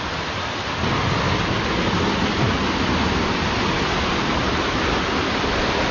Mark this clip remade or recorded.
recorded